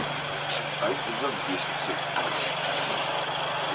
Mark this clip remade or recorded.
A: recorded